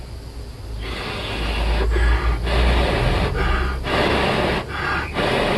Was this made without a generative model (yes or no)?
yes